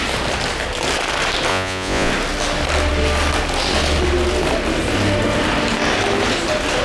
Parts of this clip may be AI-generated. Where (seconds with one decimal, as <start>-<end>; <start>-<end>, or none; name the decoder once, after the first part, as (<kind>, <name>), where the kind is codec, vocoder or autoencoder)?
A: 1.5-2.1 (vocoder, Vocos)